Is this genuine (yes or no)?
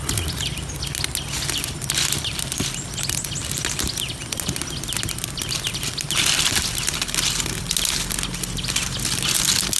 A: yes